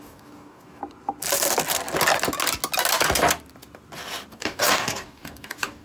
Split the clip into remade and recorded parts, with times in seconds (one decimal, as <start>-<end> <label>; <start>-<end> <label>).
0.0-0.8 remade; 0.8-4.3 recorded; 4.3-5.8 remade